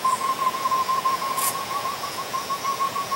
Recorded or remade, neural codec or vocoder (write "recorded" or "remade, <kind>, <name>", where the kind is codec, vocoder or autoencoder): remade, vocoder, Vocos